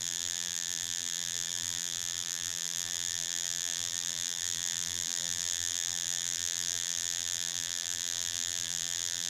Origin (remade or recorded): remade